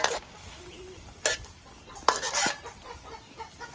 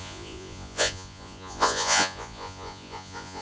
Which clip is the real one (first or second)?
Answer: first